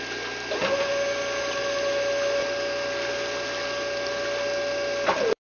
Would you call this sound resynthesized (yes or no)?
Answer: no